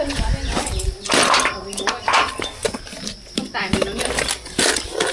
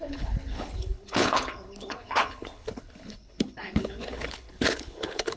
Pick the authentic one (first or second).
first